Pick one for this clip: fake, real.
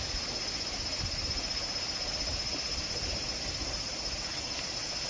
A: real